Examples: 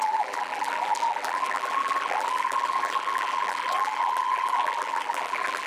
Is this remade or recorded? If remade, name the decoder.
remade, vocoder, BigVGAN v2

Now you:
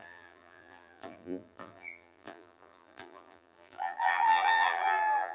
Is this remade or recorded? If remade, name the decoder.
remade, vocoder, BigVGAN v2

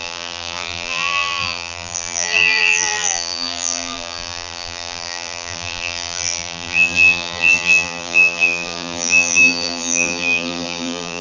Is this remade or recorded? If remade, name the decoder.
remade, vocoder, BigVGAN v2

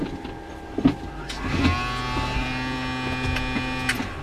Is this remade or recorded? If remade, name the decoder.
recorded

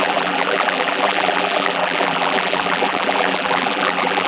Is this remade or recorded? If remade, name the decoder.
remade, vocoder, BigVGAN v2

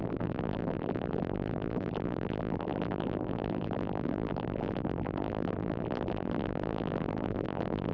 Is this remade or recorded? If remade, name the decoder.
remade, vocoder, BigVGAN v2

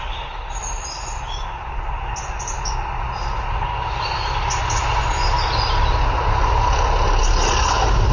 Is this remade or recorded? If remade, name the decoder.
recorded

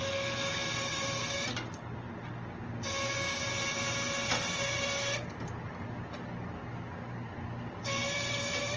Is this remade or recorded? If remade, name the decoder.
recorded